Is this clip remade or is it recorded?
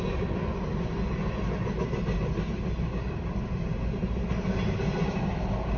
recorded